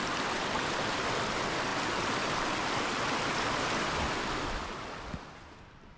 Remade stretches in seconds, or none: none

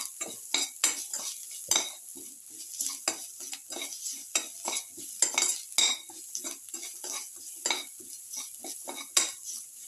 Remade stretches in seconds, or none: none

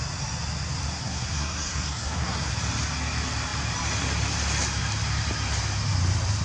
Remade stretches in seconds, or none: 1.0-2.5

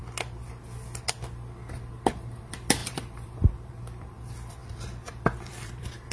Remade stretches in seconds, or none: 2.1-6.1

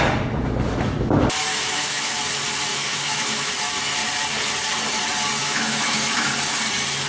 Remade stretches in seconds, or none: 1.5-2.1; 2.7-3.5; 5.4-6.3

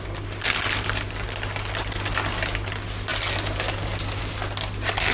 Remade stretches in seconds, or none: none